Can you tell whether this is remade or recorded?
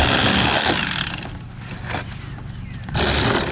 recorded